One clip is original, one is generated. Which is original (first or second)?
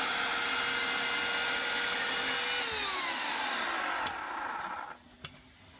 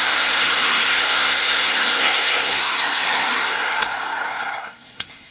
first